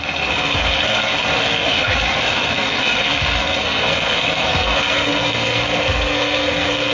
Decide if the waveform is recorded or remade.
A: remade